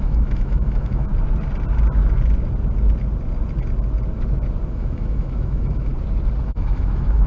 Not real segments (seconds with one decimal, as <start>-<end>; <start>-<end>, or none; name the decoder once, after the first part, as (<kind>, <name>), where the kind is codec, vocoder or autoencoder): 0.0-1.1 (autoencoder, DAC-VAE); 4.7-5.9; 6.4-7.3